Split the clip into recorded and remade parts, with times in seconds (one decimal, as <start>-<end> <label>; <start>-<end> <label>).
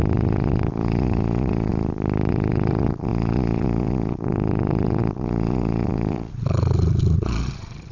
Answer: 0.0-1.7 remade; 1.7-2.3 recorded; 2.3-7.9 remade